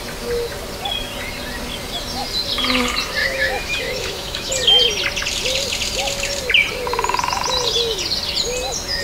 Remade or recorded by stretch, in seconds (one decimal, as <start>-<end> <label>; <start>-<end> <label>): 0.0-3.2 recorded; 3.2-4.5 remade; 4.5-9.0 recorded